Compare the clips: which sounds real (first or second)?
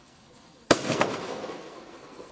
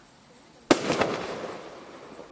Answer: second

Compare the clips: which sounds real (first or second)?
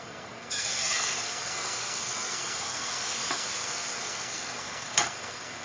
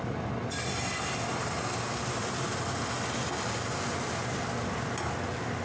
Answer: second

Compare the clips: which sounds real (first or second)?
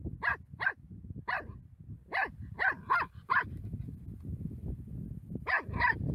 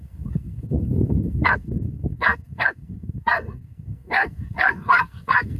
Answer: first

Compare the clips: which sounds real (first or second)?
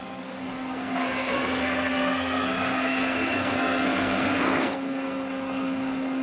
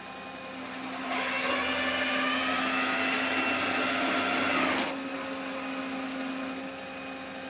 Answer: second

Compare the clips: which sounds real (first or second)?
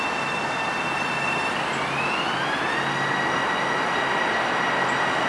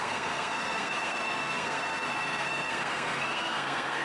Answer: first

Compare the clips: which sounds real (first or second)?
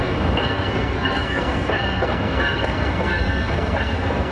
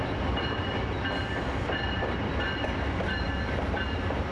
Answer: second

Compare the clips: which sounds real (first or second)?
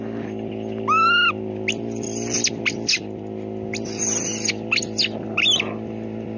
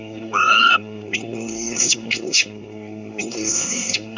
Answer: first